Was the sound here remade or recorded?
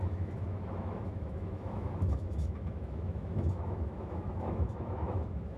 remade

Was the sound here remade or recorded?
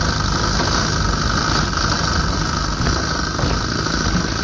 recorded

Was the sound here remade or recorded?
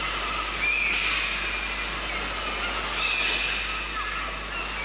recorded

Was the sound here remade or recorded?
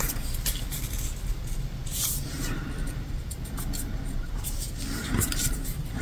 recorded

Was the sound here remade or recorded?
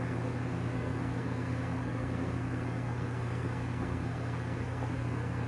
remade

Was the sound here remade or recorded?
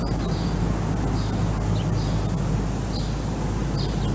recorded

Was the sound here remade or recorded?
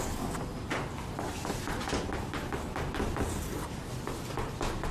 recorded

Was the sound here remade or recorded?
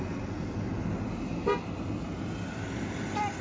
recorded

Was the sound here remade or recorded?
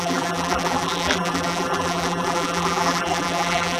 remade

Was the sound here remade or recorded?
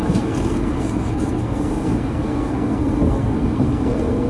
remade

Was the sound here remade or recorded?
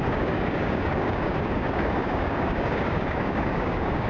remade